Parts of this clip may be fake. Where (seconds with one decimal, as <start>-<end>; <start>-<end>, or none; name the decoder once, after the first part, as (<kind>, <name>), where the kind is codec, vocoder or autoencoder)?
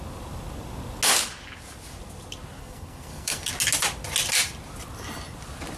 2.6-3.5 (codec, SNAC)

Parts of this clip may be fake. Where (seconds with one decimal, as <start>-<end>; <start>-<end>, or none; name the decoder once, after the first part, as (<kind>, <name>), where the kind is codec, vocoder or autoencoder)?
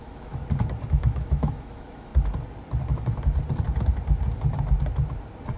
0.0-0.4 (autoencoder, DAC-VAE); 0.9-2.1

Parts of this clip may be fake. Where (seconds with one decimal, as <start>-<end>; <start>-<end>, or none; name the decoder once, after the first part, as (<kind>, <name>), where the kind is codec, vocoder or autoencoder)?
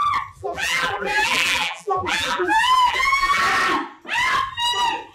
0.4-3.4 (vocoder, BigVGAN v2)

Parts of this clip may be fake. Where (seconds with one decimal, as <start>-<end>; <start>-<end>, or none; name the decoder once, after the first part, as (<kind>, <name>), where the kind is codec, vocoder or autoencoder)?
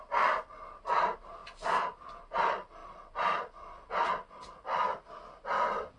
none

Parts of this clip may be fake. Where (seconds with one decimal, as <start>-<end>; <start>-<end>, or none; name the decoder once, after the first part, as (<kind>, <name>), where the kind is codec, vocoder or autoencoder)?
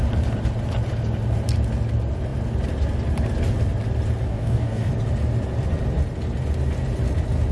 4.3-4.9 (codec, DAC)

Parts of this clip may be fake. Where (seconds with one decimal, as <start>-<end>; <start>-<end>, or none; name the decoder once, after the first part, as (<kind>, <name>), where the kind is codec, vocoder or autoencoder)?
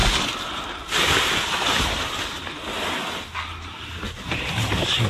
none